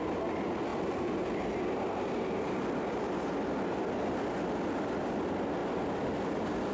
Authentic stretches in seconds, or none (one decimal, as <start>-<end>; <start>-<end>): 0.0-6.7